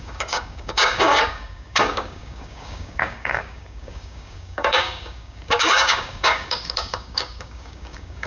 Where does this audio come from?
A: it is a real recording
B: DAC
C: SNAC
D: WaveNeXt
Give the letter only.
B